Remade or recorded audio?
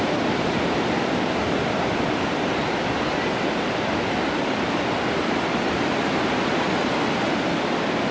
recorded